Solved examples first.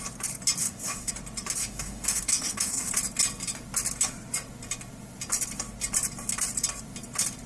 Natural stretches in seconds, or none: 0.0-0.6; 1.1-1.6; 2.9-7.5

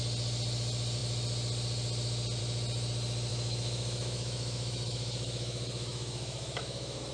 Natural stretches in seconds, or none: 0.0-3.3